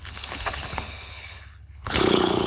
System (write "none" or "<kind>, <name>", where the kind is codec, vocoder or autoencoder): codec, HILCodec